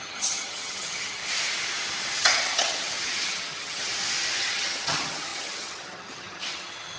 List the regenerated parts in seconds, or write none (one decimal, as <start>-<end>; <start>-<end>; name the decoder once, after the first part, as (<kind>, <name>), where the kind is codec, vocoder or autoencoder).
0.0-1.2 (vocoder, HiFi-GAN); 2.2-3.9; 4.4-7.0